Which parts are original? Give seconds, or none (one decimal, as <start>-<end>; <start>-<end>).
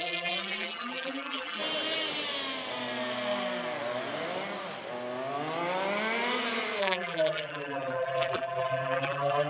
1.6-6.8